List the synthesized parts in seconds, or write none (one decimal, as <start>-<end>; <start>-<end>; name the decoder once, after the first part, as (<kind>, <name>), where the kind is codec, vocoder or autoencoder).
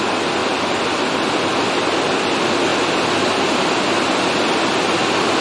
none